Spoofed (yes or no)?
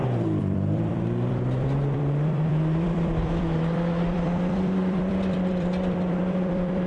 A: yes